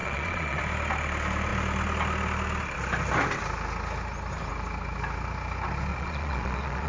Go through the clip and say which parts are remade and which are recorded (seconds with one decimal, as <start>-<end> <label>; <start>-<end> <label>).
0.0-0.6 remade; 0.6-5.9 recorded; 5.9-6.9 remade